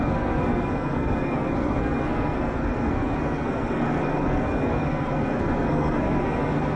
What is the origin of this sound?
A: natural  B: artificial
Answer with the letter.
B